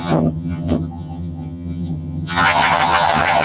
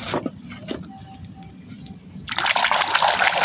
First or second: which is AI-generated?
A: first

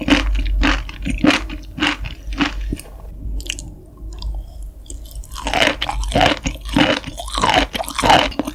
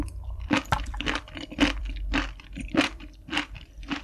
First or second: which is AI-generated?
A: second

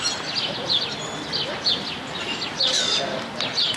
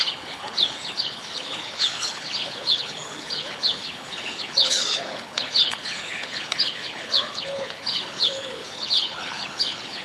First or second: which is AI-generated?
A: second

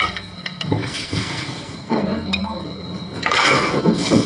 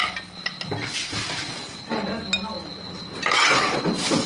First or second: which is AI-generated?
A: first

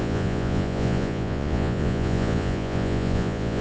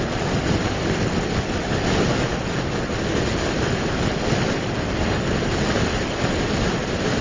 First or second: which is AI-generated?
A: first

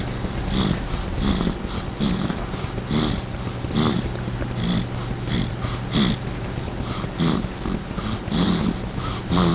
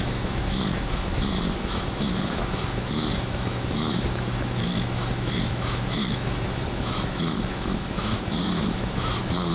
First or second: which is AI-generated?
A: second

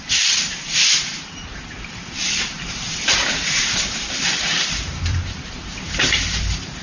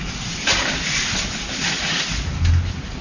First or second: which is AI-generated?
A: first